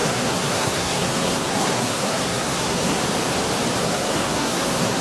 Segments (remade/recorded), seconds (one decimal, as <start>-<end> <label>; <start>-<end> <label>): 0.0-3.0 remade; 3.0-3.8 recorded; 3.8-5.0 remade

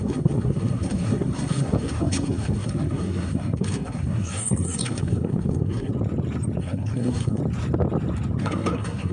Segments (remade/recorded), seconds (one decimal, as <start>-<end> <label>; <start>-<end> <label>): 0.0-5.9 remade; 5.9-6.6 recorded; 6.6-7.4 remade; 7.4-8.4 recorded; 8.4-9.1 remade

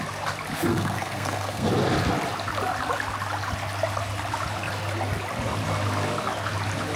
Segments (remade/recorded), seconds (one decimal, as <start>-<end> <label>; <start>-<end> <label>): 0.0-0.7 recorded; 0.7-1.7 remade; 1.7-7.0 recorded

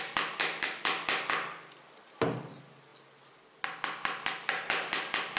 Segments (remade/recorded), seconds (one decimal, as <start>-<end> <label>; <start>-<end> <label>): 0.0-5.4 recorded

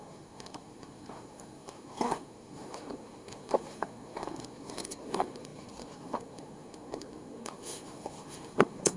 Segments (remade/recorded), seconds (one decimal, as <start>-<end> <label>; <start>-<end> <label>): 0.0-9.0 remade

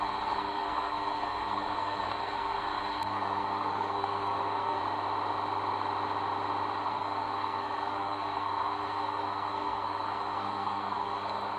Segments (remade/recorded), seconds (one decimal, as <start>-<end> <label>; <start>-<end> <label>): 0.0-4.8 remade; 4.8-6.9 recorded; 6.9-11.6 remade

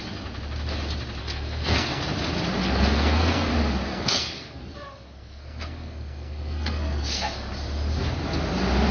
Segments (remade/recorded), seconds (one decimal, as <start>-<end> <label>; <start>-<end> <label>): 0.0-1.2 recorded; 1.2-2.0 remade; 2.0-2.6 recorded; 2.6-3.5 remade; 3.5-3.9 recorded; 3.9-7.5 remade; 7.5-8.9 recorded